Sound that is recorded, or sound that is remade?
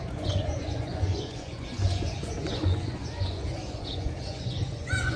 remade